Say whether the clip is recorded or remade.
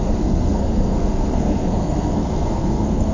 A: remade